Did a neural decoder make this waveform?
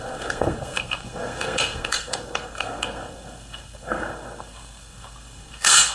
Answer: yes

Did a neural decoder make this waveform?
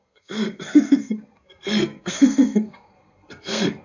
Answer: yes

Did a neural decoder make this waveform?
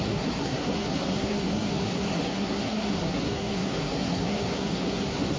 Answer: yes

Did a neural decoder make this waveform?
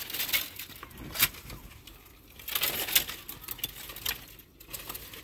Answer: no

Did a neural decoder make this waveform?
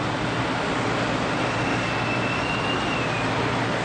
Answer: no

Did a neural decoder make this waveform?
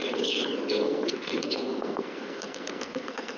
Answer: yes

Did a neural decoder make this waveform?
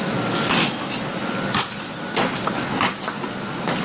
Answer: no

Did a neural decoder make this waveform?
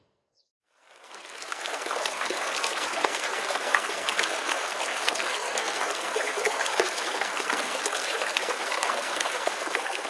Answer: yes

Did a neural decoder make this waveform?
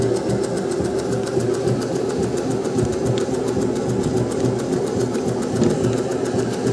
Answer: no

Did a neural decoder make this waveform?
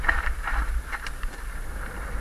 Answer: no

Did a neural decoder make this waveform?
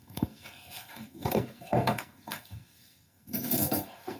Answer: yes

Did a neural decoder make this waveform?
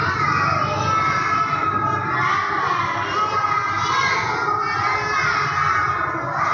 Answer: no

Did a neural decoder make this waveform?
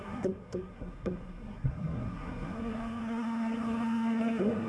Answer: yes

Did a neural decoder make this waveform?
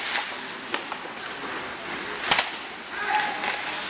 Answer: no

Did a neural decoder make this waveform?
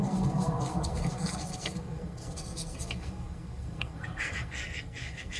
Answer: yes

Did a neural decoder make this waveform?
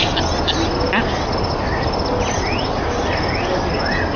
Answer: no